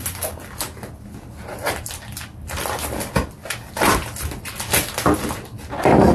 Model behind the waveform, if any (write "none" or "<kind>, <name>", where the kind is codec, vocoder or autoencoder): none